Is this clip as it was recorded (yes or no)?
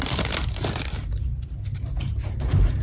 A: yes